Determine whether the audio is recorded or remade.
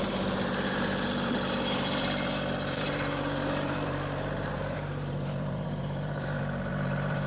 remade